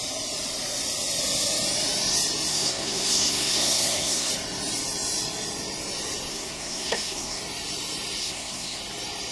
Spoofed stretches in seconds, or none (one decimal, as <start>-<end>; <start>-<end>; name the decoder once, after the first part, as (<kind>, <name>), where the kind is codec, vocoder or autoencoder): 2.5-4.3 (codec, SNAC); 6.3-7.4; 8.2-8.8